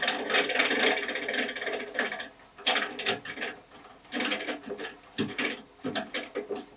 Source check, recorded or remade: recorded